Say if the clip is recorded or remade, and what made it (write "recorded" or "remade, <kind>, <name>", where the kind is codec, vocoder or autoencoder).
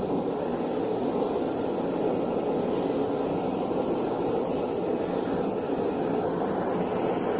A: recorded